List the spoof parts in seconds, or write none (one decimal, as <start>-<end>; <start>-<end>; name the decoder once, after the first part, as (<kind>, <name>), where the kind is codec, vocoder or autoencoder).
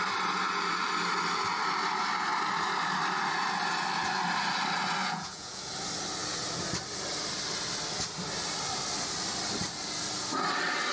5.0-5.6 (vocoder, Vocos)